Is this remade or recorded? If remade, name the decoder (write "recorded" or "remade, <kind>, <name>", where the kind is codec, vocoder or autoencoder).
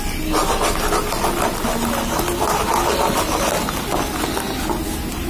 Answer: recorded